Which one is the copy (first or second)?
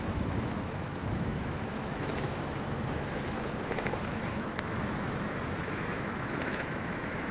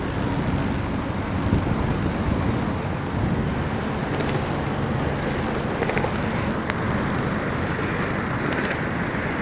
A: first